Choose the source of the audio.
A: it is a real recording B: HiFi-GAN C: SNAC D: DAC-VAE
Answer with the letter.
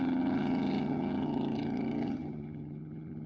B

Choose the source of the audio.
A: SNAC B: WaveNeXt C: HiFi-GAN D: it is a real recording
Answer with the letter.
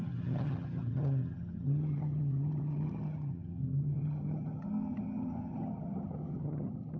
C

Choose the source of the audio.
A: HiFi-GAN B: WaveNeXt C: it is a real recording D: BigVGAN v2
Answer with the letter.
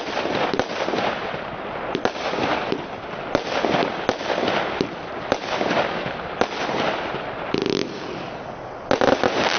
C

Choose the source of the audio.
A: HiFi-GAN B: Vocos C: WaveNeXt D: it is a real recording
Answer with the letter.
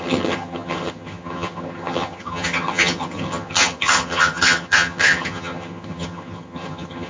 A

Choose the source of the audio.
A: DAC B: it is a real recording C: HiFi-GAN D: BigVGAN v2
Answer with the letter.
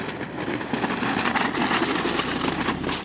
B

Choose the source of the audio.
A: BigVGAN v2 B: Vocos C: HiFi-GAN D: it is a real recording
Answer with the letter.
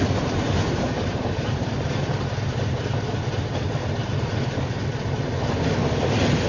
D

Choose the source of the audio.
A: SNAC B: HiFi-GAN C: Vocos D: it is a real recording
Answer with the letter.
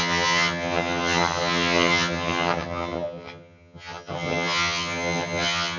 B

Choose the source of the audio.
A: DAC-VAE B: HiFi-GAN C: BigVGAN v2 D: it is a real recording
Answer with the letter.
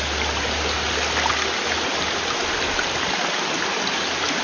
D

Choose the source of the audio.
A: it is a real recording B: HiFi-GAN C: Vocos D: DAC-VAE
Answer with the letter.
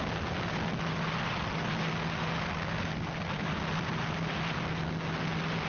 A